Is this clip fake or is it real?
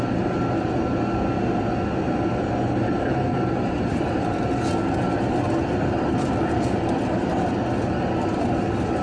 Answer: real